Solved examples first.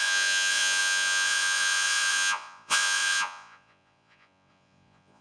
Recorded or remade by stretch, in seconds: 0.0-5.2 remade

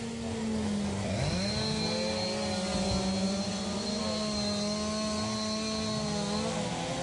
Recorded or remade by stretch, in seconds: 0.0-3.5 recorded; 3.5-4.0 remade; 4.0-7.0 recorded

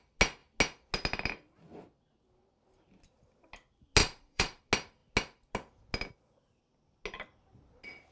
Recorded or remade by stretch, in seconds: 0.0-4.0 recorded; 4.0-4.6 remade; 4.6-8.1 recorded

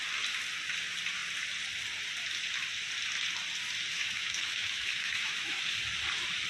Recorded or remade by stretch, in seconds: 0.0-3.9 recorded; 3.9-5.7 remade; 5.7-6.5 recorded

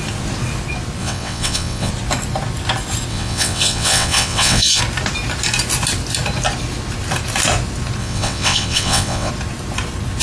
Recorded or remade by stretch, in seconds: 0.0-1.0 recorded; 1.0-1.9 remade; 1.9-3.1 recorded; 3.1-4.8 remade; 4.8-8.0 recorded; 8.0-9.3 remade; 9.3-10.2 recorded

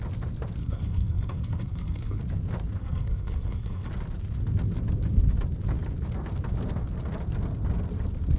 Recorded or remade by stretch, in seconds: 0.0-0.6 recorded; 0.6-2.2 remade; 2.2-2.8 recorded; 2.8-3.9 remade; 3.9-8.4 recorded

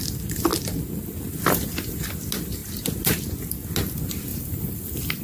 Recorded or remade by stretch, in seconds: 0.0-4.3 recorded; 4.3-5.2 remade